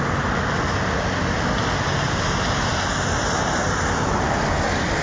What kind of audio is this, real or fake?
real